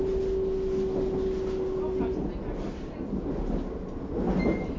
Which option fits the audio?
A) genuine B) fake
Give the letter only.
A